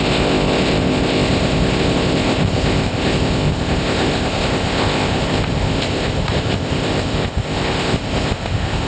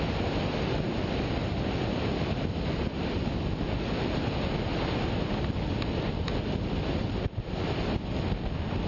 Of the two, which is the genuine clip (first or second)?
second